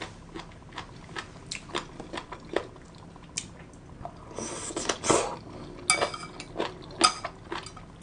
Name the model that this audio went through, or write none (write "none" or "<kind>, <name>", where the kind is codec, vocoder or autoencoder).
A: none